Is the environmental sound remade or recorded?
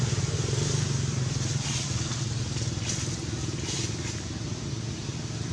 recorded